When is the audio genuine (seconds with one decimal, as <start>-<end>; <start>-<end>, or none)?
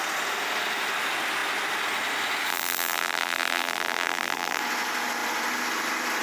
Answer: 0.0-2.5; 4.6-6.2